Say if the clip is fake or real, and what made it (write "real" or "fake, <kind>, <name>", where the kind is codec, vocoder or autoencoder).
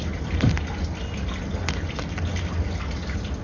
real